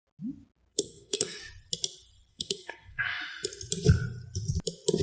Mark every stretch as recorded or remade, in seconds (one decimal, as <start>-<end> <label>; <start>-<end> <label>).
0.0-0.7 recorded; 0.7-1.4 remade; 1.4-2.3 recorded; 2.3-3.2 remade; 3.2-5.0 recorded